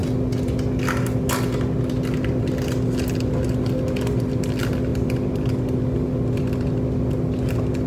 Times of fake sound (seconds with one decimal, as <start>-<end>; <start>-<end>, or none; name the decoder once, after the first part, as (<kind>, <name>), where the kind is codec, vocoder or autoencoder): none